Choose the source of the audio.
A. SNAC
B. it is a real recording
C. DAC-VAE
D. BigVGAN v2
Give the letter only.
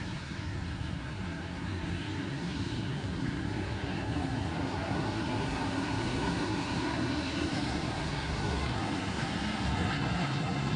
A